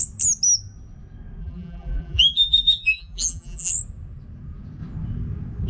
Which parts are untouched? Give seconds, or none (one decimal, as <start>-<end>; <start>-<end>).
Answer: 0.0-1.4; 3.7-5.7